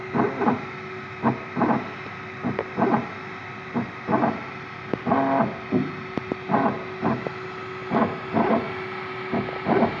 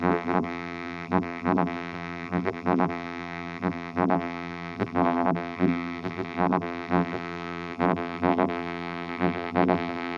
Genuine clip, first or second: first